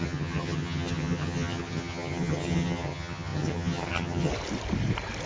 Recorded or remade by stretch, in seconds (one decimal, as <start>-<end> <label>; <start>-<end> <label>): 0.0-4.3 remade; 4.3-5.3 recorded